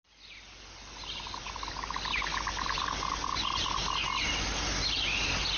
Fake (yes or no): no